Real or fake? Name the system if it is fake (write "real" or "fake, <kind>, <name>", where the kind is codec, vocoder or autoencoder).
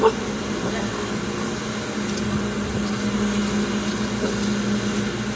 real